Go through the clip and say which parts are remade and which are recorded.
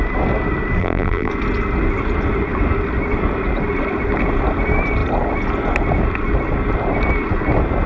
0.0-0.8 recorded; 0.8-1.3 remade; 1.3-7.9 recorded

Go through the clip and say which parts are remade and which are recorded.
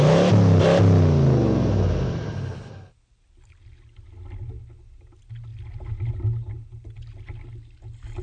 0.0-8.2 recorded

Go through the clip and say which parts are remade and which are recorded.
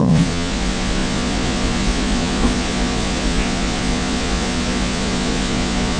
0.0-6.0 remade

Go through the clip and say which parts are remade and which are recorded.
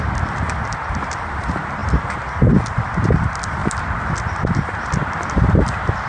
0.0-1.8 remade; 1.8-2.5 recorded; 2.5-3.6 remade; 3.6-4.1 recorded; 4.1-6.1 remade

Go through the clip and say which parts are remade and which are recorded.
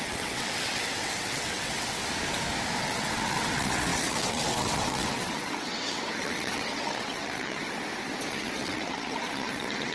0.0-2.0 remade; 2.0-2.8 recorded; 2.8-7.6 remade; 7.6-8.3 recorded; 8.3-9.9 remade